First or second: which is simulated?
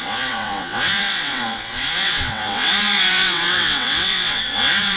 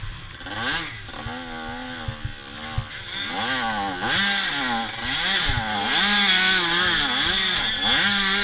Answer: first